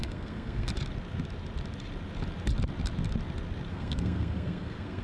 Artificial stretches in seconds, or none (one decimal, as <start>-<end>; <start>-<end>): 0.0-0.7; 3.7-5.0